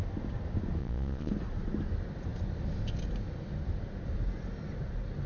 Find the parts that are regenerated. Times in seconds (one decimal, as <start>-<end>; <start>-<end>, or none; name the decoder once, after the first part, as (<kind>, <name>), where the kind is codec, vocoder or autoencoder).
0.8-1.3 (vocoder, Vocos)